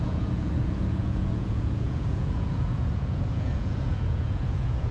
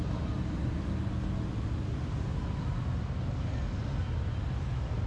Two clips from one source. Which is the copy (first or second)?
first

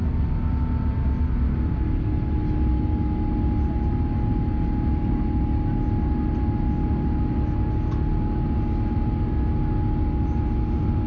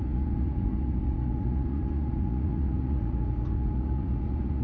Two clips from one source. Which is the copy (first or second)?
second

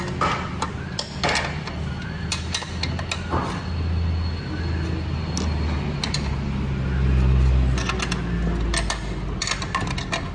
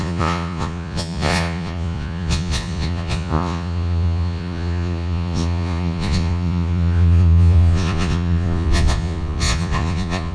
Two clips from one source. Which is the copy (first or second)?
second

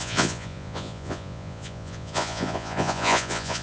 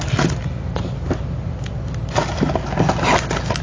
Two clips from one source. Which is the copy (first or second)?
first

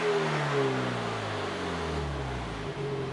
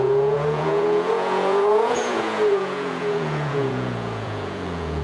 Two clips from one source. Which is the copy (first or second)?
second